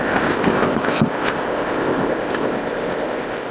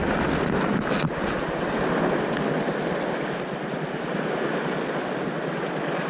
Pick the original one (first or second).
second